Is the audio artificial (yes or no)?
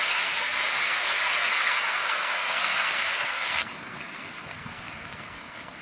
yes